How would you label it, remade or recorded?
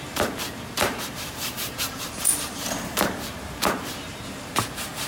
remade